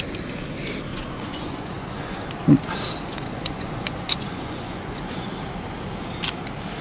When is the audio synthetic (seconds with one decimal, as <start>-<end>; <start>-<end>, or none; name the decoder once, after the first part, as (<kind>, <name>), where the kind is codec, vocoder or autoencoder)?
0.9-2.3 (vocoder, Vocos); 3.1-5.3